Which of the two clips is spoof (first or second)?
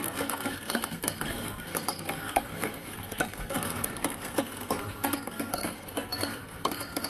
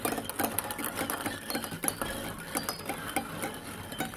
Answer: first